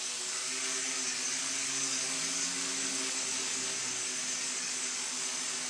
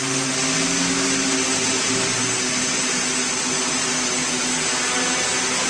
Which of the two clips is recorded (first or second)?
second